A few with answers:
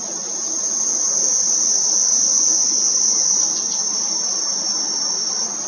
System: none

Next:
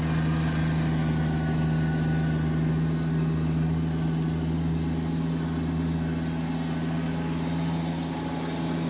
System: none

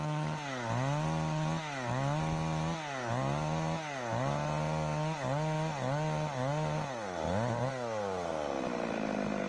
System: none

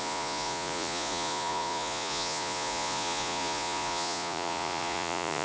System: vocoder, Vocos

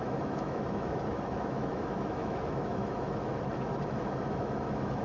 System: autoencoder, DAC-VAE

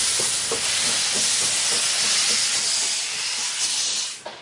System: none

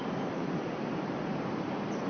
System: vocoder, BigVGAN v2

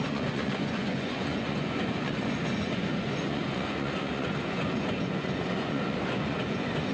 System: vocoder, Vocos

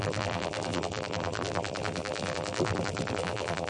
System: vocoder, BigVGAN v2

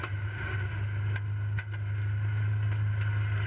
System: none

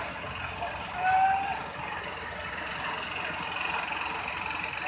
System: none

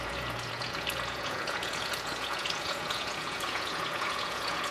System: vocoder, Vocos